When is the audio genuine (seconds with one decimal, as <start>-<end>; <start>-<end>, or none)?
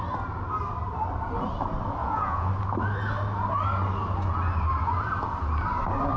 0.0-2.0; 2.5-6.2